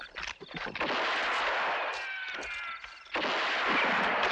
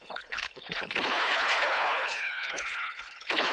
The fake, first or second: second